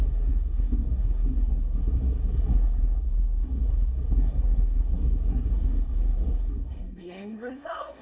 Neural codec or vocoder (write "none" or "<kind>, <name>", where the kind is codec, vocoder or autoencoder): codec, SNAC